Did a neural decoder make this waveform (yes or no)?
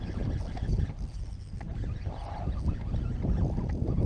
no